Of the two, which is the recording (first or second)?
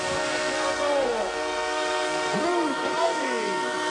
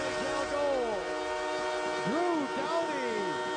second